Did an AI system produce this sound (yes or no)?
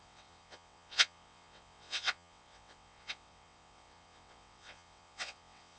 yes